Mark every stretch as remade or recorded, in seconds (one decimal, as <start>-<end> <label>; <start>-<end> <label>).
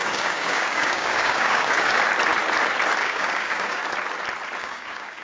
0.0-2.0 remade; 2.0-3.0 recorded; 3.0-3.8 remade; 3.8-4.6 recorded; 4.6-5.2 remade